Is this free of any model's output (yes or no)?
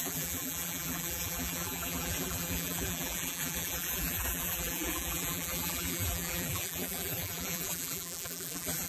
no